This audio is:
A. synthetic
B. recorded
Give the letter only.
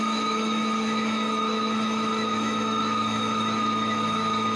A